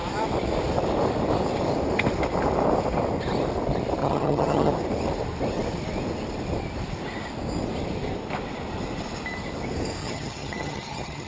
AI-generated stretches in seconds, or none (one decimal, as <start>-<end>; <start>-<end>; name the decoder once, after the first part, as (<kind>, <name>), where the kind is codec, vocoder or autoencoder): 4.0-4.7 (vocoder, HiFi-GAN); 10.0-11.3